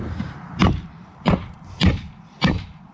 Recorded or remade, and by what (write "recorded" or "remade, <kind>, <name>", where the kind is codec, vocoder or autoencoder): remade, vocoder, BigVGAN v2